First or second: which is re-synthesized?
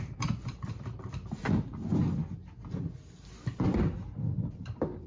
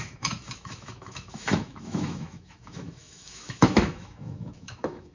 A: second